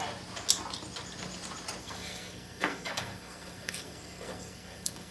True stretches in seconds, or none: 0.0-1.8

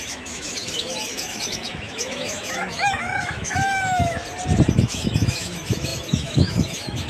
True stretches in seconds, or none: 4.2-4.8

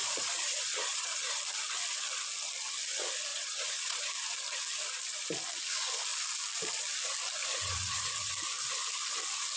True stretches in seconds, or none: 1.4-3.3; 4.0-7.5; 8.3-9.6